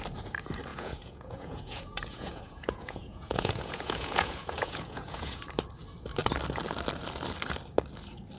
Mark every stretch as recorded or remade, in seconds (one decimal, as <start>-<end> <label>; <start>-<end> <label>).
0.0-0.7 recorded; 0.7-5.4 remade; 5.4-8.4 recorded